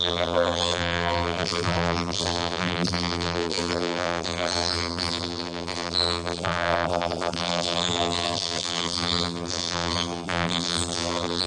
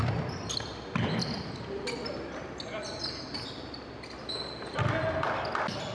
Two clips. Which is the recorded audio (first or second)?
second